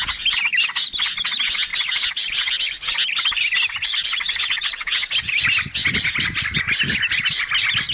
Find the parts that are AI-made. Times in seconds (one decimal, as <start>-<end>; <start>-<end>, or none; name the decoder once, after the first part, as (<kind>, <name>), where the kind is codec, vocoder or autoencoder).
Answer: none